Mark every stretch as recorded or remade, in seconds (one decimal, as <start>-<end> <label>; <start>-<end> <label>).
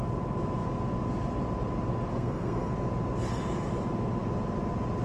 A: 0.0-2.1 recorded; 2.1-2.7 remade; 2.7-5.0 recorded